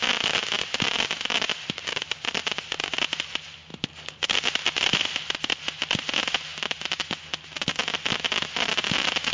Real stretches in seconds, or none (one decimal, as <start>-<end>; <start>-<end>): 0.0-9.3